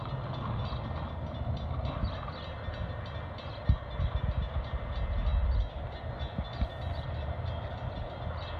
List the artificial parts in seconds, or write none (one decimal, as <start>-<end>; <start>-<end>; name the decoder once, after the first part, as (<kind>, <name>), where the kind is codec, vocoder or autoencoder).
none